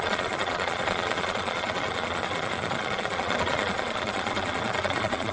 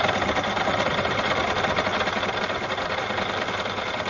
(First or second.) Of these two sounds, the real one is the second